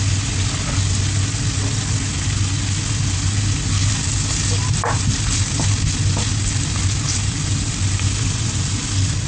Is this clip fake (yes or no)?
no